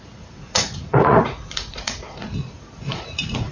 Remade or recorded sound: remade